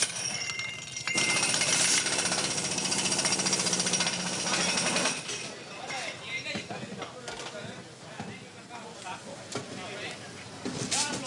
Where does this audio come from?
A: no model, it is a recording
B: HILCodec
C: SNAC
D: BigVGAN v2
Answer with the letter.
A